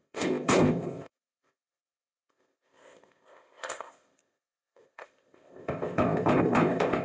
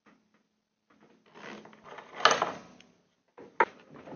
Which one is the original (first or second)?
second